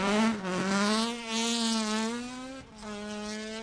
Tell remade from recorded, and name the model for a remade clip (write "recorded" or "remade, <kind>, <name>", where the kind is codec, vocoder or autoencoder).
recorded